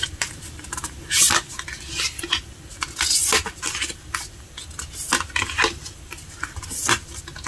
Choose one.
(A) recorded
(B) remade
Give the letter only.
A